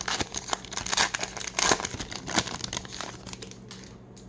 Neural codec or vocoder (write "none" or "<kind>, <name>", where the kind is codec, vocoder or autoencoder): none